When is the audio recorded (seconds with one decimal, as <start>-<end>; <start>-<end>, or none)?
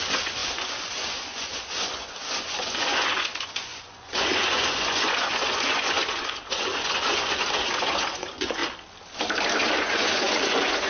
8.6-9.8